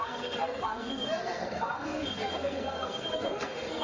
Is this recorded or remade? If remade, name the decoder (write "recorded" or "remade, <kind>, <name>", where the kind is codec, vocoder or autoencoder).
remade, codec, SNAC